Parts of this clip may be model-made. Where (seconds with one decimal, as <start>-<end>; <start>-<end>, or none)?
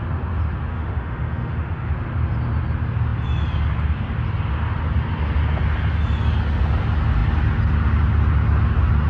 0.7-1.9